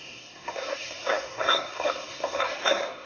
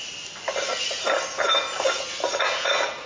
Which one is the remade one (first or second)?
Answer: first